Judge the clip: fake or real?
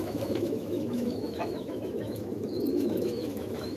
fake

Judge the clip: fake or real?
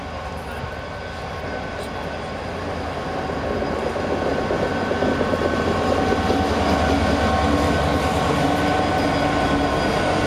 real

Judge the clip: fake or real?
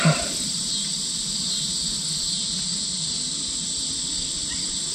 fake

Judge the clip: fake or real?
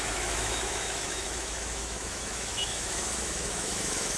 fake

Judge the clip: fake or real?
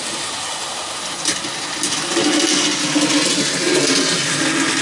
real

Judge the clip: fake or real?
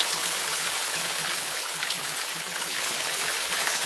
fake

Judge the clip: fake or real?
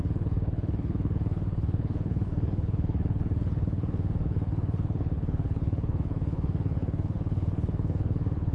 fake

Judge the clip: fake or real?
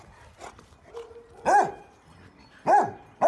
real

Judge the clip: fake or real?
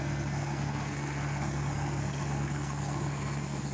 fake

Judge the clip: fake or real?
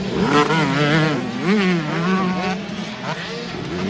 real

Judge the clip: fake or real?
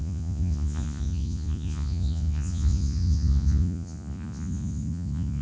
fake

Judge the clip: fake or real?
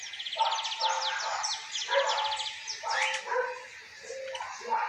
real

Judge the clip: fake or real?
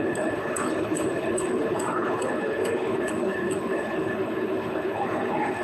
fake